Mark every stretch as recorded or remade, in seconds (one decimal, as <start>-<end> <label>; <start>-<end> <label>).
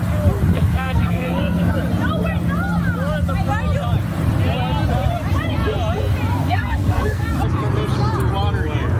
0.0-0.5 recorded; 0.5-1.7 remade; 1.7-6.4 recorded; 6.4-7.3 remade; 7.3-9.0 recorded